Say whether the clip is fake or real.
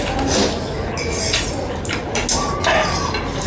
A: real